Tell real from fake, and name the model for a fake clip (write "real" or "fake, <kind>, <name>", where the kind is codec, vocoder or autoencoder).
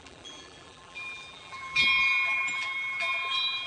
fake, vocoder, BigVGAN v2